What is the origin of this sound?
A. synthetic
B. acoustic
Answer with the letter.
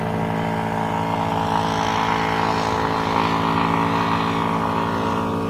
B